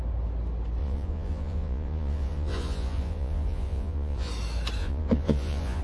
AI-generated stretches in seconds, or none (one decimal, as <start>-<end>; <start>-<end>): 0.8-4.3; 4.8-5.8